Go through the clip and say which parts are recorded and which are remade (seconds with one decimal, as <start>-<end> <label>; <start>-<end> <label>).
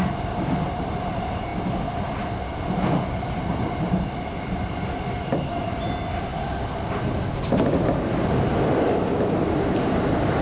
0.0-10.4 recorded